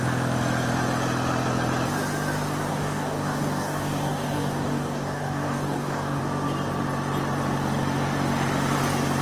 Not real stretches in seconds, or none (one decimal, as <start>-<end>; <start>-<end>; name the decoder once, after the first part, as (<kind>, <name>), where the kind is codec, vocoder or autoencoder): 2.7-6.2 (codec, DAC)